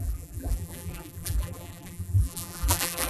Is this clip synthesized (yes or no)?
yes